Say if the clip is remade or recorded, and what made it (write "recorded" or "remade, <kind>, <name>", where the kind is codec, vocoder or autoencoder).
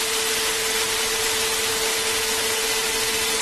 recorded